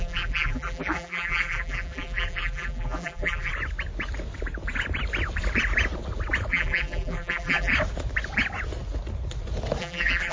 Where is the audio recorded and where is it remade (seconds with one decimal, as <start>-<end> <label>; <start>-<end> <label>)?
0.0-3.5 remade; 3.5-6.5 recorded; 6.5-7.7 remade; 7.7-9.8 recorded; 9.8-10.3 remade